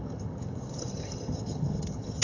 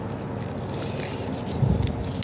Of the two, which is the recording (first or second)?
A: second